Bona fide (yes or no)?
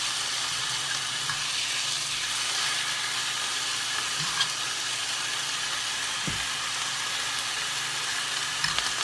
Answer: yes